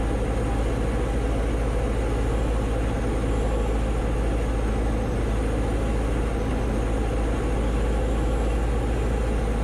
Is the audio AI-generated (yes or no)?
no